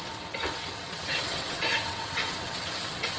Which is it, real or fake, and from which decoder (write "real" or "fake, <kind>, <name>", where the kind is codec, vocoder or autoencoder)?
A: fake, vocoder, WaveNeXt